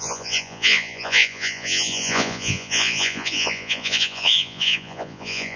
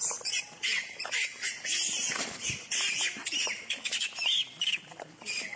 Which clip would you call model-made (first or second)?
first